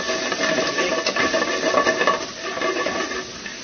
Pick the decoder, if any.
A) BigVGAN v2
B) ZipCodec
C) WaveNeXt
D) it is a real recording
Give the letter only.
D